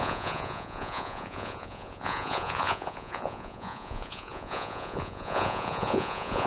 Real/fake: fake